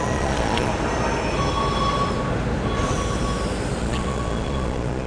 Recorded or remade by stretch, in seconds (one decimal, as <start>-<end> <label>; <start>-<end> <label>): 0.0-0.7 remade; 0.7-3.8 recorded; 3.8-5.1 remade